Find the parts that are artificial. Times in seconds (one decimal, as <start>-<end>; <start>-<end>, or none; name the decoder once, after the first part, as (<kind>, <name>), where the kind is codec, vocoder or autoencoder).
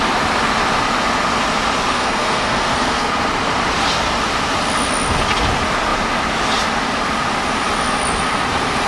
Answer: 1.9-3.1 (codec, SNAC)